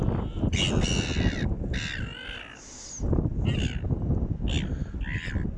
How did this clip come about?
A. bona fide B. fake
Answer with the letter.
A